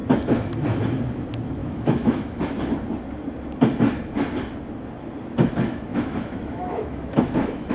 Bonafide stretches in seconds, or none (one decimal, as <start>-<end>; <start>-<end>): 0.0-1.6; 2.4-5.9